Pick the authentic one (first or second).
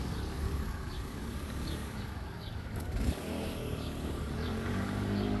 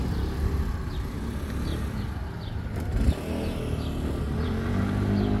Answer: second